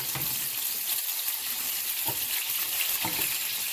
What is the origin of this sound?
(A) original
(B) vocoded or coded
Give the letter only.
A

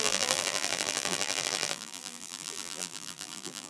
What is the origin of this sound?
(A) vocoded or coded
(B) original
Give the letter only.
A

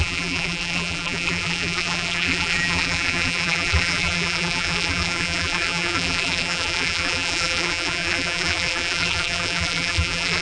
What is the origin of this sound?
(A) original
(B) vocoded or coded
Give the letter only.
B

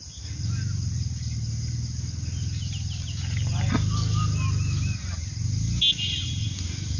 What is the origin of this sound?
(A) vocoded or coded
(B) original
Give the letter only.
B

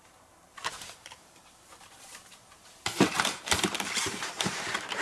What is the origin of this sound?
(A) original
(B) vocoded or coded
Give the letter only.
B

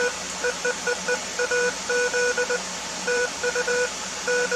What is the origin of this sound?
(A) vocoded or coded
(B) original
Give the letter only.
A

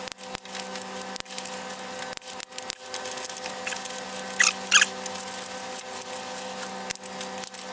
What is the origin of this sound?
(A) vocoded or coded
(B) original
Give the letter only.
B